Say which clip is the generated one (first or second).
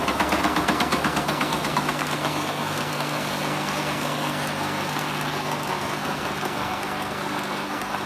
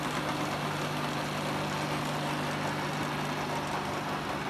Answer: first